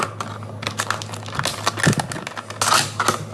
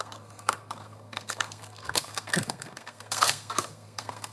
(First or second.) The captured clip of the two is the first